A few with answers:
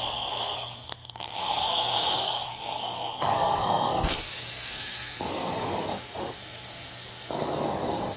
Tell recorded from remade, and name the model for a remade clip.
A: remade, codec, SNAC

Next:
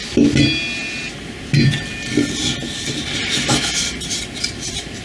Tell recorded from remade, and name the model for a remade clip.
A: recorded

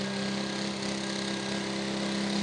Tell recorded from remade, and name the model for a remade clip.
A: recorded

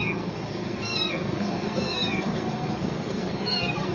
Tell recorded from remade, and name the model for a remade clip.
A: remade, codec, SNAC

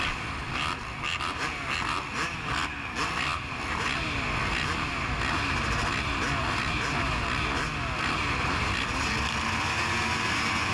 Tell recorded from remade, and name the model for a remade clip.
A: recorded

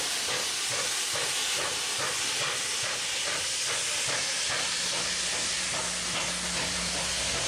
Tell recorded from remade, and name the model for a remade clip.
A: recorded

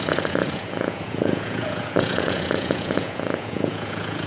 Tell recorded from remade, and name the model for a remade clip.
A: remade, vocoder, Vocos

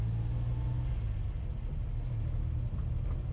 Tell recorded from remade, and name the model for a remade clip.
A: recorded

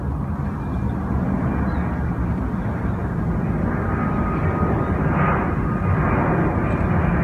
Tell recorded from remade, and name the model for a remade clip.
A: recorded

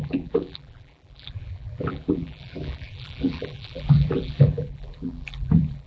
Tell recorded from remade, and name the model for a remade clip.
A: remade, vocoder, BigVGAN v2